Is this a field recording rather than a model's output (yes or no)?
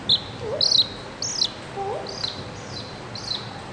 yes